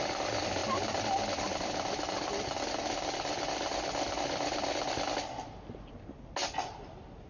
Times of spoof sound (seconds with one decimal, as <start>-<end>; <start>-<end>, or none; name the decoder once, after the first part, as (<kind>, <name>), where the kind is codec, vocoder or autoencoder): none